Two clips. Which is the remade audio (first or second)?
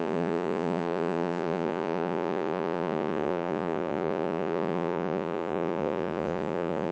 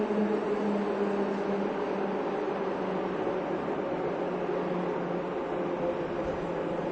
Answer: first